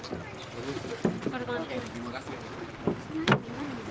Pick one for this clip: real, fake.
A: real